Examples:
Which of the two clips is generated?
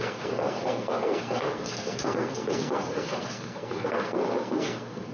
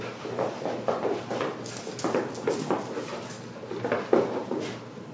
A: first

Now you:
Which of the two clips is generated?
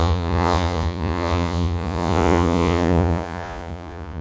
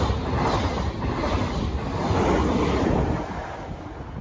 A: first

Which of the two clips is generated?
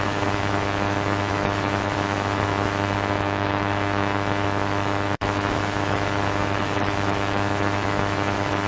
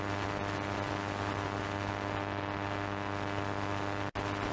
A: first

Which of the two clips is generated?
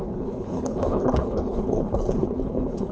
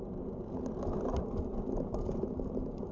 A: first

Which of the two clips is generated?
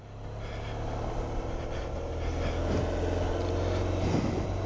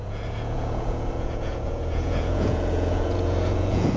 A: second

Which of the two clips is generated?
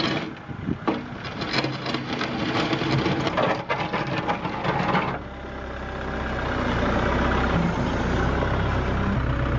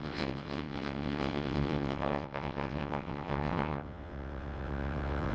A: second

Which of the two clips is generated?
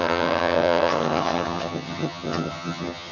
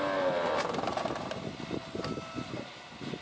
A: first